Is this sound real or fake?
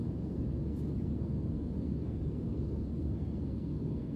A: fake